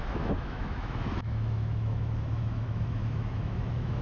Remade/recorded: remade